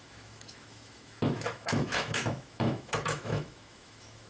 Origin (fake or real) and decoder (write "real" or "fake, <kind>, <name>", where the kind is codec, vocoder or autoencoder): fake, autoencoder, DAC-VAE